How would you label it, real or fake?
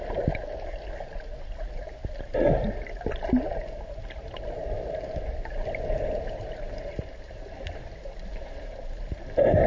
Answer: real